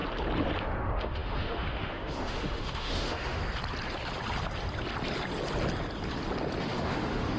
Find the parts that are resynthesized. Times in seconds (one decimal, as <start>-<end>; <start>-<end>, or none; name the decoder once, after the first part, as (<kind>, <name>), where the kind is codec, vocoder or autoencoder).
0.6-3.4 (autoencoder, DAC-VAE); 6.6-7.4